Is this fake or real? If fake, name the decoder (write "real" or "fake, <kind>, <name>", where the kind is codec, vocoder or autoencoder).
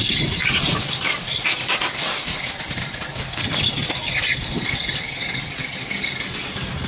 real